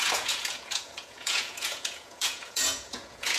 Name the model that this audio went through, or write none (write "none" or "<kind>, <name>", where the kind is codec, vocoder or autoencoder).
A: vocoder, Vocos